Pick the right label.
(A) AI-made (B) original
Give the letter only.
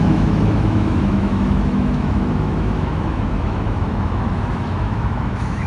A